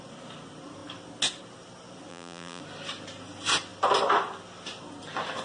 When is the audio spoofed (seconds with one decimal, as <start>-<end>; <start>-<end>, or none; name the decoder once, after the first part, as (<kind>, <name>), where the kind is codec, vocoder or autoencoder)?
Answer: 2.1-2.6 (vocoder, BigVGAN v2)